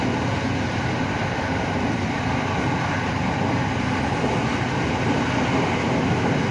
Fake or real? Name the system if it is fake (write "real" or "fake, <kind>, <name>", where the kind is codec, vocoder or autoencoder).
real